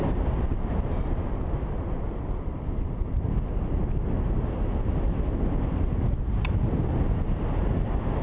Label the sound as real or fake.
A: real